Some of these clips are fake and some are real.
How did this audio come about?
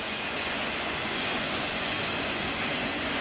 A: fake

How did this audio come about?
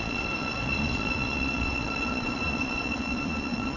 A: fake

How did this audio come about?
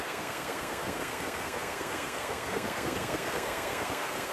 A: fake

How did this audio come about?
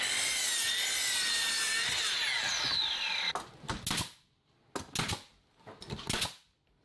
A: real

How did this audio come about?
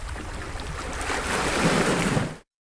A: real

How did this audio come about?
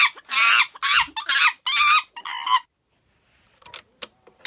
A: real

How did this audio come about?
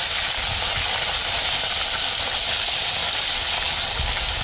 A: real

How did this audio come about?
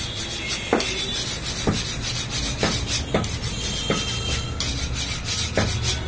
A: real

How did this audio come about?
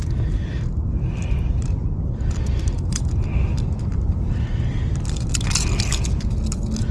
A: real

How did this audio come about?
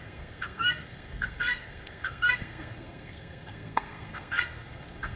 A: fake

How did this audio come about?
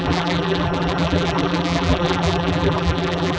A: fake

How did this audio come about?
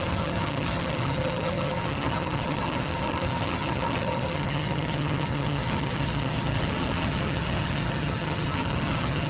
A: fake